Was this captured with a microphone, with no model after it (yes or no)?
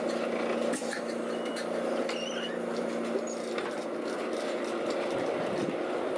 yes